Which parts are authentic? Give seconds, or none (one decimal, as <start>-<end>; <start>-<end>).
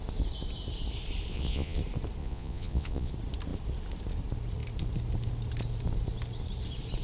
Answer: 0.0-1.3; 1.8-2.2; 3.1-7.0